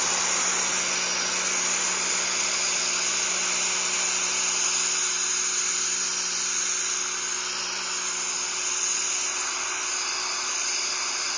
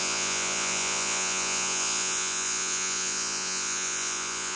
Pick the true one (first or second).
first